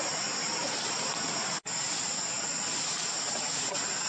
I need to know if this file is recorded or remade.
recorded